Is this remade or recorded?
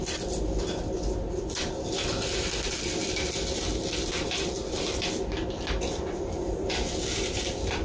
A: recorded